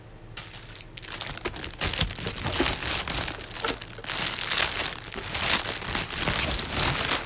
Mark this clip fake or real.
real